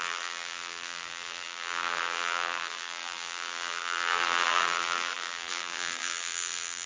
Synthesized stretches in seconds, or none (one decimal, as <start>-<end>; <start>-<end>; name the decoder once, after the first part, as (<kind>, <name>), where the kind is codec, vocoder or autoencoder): 0.0-6.9 (vocoder, BigVGAN v2)